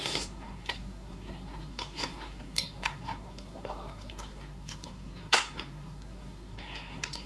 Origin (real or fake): fake